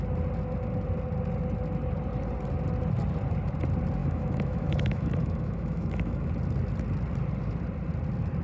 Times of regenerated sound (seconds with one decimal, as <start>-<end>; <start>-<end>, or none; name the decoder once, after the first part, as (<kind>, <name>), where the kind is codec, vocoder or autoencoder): 4.0-6.3 (autoencoder, DAC-VAE)